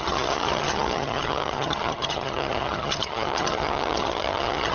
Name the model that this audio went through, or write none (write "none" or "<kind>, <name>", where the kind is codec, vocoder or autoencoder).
vocoder, HiFi-GAN